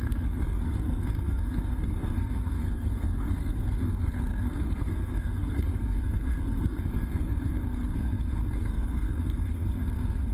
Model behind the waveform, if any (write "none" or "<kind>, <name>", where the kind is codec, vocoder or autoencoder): codec, SNAC